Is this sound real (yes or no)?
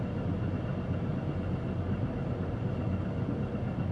yes